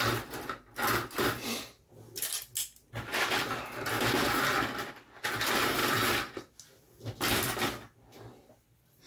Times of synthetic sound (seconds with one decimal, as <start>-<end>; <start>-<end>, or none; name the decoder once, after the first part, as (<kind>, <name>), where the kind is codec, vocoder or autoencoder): 5.8-6.5 (vocoder, BigVGAN v2)